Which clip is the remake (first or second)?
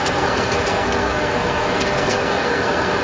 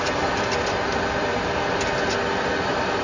first